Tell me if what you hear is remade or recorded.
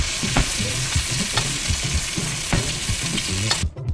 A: remade